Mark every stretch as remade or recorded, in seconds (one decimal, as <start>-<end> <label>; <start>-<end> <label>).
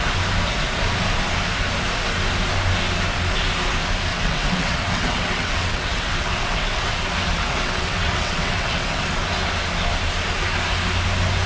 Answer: 0.0-4.1 recorded; 4.1-6.9 remade; 6.9-7.4 recorded; 7.4-9.0 remade; 9.0-11.5 recorded